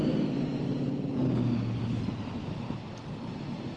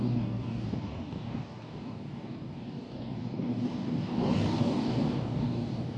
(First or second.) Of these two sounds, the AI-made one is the second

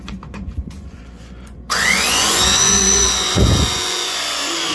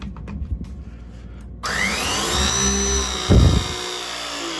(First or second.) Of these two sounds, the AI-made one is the first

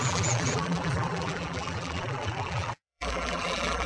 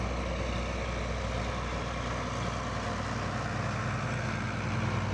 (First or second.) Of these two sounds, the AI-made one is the first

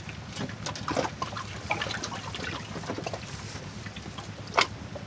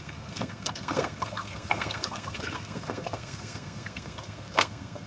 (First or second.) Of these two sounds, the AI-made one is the second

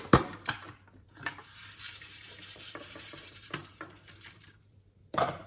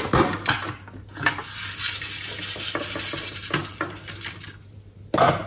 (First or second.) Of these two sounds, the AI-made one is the first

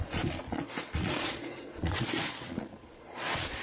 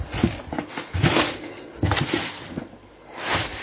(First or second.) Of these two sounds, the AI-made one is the first